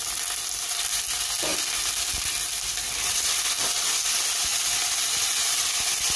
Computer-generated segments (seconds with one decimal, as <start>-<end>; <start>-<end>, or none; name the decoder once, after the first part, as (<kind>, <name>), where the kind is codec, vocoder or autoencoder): none